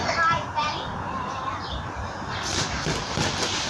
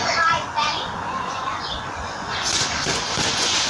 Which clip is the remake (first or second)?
second